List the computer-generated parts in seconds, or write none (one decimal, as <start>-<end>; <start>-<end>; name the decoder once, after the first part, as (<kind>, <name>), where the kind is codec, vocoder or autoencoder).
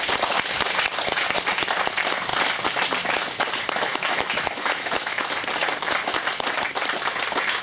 3.9-5.3 (autoencoder, DAC-VAE)